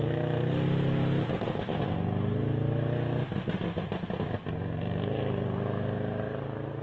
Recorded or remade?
recorded